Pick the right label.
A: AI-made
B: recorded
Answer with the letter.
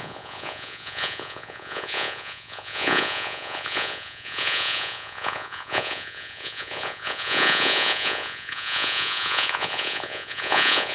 A